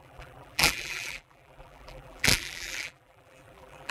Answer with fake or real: fake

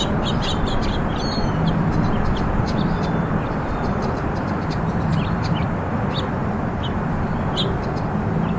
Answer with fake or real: fake